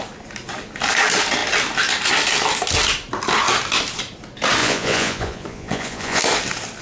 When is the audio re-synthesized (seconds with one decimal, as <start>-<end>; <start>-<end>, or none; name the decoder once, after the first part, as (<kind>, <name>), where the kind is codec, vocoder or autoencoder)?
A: 4.6-6.2 (vocoder, Vocos)